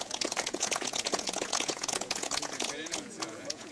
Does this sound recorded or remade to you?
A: remade